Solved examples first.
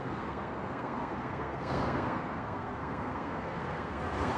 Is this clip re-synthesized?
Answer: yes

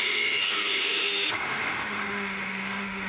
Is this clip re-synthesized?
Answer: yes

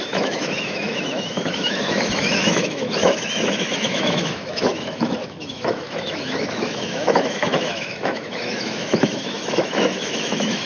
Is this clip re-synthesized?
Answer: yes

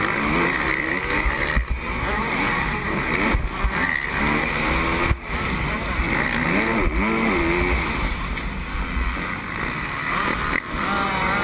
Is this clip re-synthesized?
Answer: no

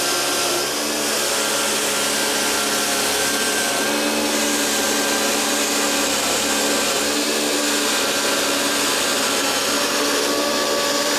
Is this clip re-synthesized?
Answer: no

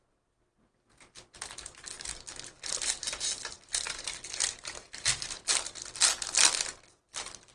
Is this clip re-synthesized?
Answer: no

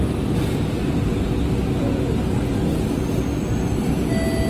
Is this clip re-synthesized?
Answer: no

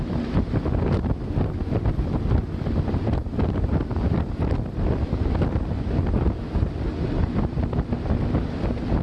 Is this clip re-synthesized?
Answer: no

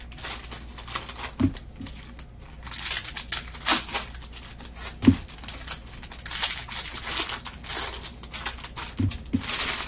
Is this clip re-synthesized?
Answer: no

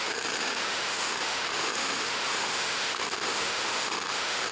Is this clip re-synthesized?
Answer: yes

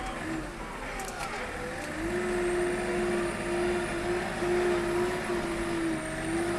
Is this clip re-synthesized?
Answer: no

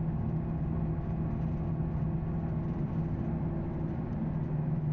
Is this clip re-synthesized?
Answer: no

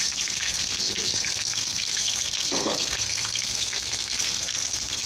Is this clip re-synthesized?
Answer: yes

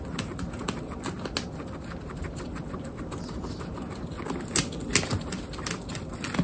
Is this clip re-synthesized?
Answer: no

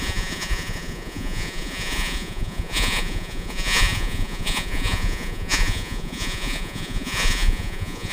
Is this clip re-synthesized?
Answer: yes